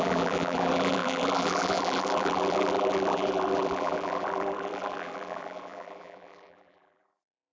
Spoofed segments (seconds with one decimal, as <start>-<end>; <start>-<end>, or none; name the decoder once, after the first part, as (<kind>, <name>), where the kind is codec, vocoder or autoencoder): 0.0-7.5 (vocoder, BigVGAN v2)